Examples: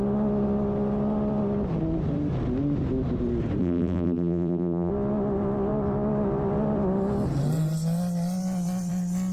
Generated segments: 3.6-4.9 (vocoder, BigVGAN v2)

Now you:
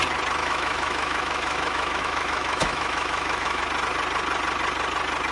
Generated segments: 0.4-3.6 (autoencoder, DAC-VAE)

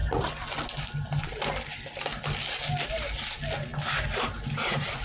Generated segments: none